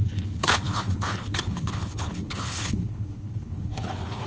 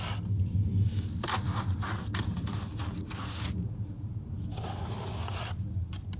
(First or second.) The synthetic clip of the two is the first